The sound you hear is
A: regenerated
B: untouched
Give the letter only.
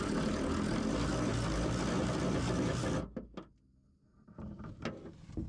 B